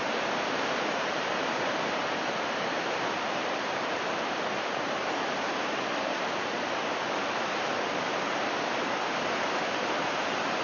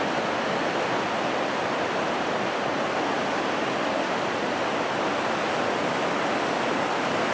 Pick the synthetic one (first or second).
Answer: first